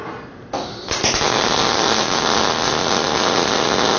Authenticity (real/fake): real